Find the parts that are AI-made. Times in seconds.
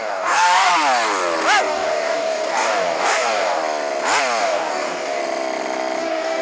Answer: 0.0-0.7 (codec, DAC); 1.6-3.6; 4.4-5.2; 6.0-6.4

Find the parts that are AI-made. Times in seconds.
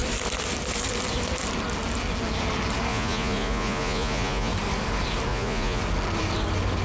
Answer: 2.9-4.5 (vocoder, Vocos); 5.3-5.8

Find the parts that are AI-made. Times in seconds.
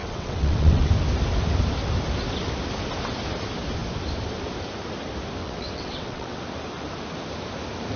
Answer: 0.0-0.9 (vocoder, WaveNeXt); 5.4-6.4